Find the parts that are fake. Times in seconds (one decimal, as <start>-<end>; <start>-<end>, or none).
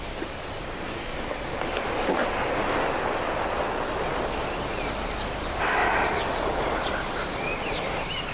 0.0-1.1; 4.2-8.3